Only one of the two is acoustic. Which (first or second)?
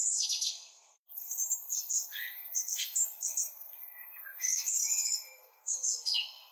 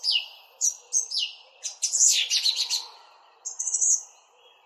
second